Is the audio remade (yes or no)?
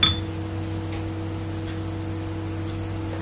no